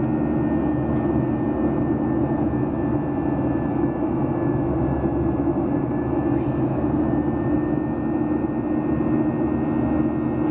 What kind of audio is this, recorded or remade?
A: recorded